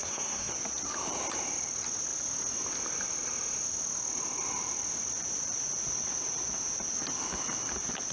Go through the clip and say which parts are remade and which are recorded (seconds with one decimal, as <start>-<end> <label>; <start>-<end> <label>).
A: 0.0-0.5 remade; 0.5-8.1 recorded